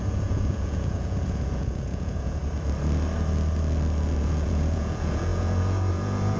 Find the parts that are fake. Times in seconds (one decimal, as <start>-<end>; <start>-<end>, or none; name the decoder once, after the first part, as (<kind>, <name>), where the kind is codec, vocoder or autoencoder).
0.0-2.4 (vocoder, Vocos); 4.2-6.4